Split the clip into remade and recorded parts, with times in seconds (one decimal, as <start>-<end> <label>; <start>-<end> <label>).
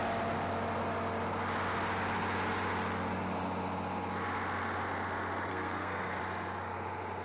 0.0-5.5 recorded; 5.5-6.2 remade; 6.2-7.2 recorded